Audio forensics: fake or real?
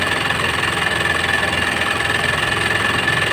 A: fake